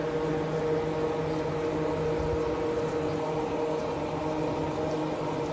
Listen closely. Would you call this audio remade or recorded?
recorded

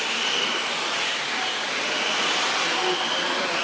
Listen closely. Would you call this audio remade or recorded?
recorded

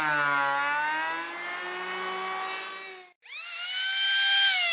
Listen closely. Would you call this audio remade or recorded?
recorded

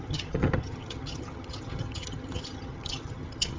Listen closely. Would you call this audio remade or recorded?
remade